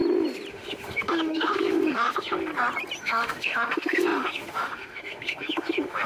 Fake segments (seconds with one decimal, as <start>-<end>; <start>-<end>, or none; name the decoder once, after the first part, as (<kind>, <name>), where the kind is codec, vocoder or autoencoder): 0.5-2.5 (autoencoder, DAC-VAE); 3.0-6.1